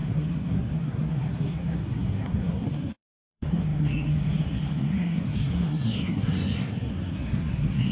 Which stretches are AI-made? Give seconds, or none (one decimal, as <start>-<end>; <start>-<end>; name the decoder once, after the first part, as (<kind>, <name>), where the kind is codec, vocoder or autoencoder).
0.0-7.9 (codec, SNAC)